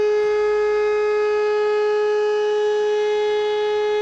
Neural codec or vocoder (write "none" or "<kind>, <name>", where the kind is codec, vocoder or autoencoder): none